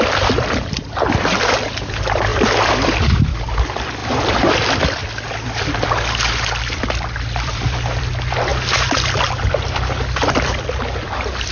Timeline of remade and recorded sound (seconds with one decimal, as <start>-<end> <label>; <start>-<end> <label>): 0.0-11.5 remade